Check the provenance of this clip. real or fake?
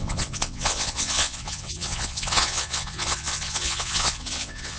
fake